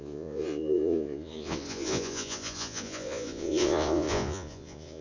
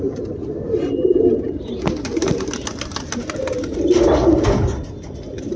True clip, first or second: second